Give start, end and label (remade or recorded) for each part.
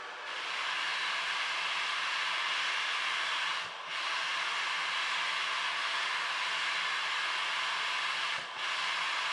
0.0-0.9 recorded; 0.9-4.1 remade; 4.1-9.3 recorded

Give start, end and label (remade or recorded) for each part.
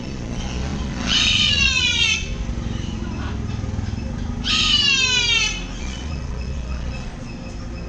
0.0-2.3 remade; 2.3-5.8 recorded; 5.8-7.1 remade; 7.1-7.9 recorded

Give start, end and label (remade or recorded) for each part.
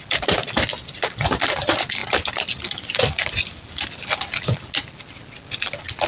0.0-6.1 recorded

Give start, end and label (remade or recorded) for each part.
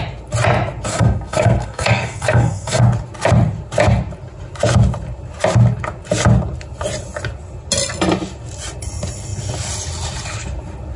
0.0-0.9 recorded; 0.9-2.8 remade; 2.8-11.0 recorded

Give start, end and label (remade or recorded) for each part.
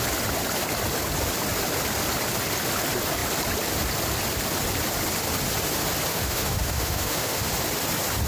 0.0-6.1 recorded; 6.1-7.5 remade; 7.5-8.3 recorded